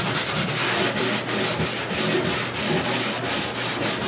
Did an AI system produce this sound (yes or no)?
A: no